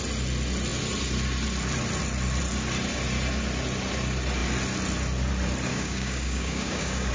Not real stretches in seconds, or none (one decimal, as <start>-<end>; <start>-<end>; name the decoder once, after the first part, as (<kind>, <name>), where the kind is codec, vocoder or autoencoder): 5.7-7.1 (codec, DAC)